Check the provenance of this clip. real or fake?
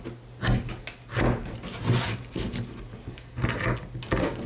real